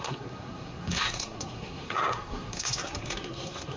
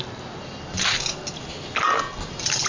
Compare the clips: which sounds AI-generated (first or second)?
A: first